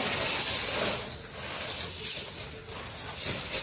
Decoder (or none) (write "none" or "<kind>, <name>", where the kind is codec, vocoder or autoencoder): none